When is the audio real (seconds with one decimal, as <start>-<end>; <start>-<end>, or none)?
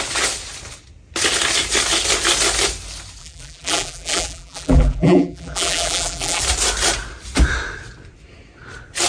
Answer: 0.0-3.2; 6.4-9.1